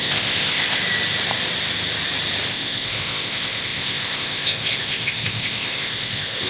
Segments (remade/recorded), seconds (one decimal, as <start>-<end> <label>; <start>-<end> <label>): 0.0-0.8 remade; 0.8-2.5 recorded; 2.5-6.5 remade